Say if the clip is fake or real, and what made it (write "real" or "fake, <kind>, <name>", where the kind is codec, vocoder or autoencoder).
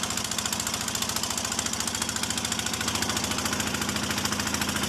real